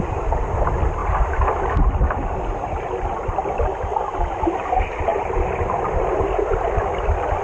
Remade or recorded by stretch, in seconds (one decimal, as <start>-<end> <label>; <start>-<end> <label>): 0.0-5.1 recorded; 5.1-6.8 remade; 6.8-7.4 recorded

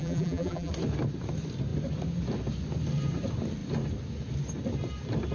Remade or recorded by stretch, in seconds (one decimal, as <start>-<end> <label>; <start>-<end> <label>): 0.0-0.7 remade; 0.7-5.3 recorded

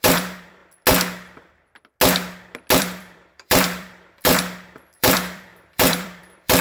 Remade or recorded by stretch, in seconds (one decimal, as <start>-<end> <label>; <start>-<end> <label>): 0.0-0.6 remade; 0.6-2.8 recorded; 2.8-6.6 remade

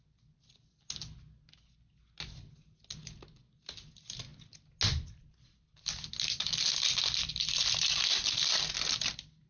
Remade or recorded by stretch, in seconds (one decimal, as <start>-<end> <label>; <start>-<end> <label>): 0.0-9.5 recorded

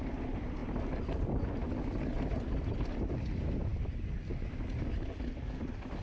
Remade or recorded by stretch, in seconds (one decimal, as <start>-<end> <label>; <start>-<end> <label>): 0.0-6.0 recorded